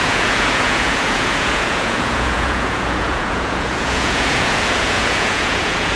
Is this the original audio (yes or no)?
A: no